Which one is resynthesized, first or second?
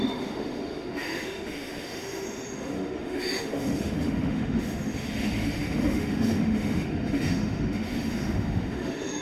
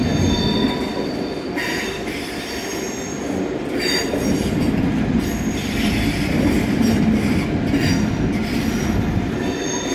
first